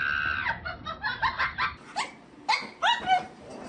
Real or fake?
real